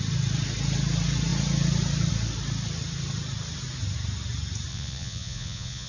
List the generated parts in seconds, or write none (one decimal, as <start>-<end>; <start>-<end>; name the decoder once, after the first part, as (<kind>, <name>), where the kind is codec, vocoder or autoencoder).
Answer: 4.7-5.9 (vocoder, Vocos)